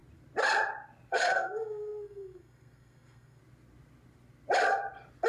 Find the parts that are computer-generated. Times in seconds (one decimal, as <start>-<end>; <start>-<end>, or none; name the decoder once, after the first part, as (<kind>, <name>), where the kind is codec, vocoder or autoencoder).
1.1-3.4 (codec, SNAC)